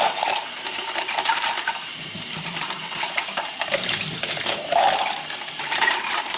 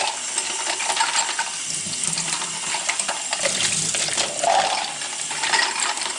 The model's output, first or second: first